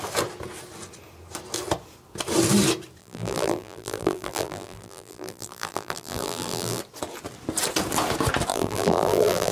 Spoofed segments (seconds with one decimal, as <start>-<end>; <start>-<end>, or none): 3.0-6.8; 8.5-9.5